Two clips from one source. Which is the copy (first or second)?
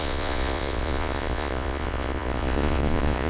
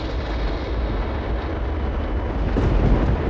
first